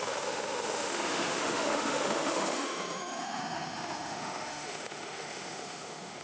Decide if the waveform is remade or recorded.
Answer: remade